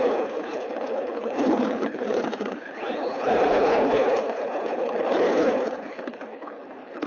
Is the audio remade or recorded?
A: remade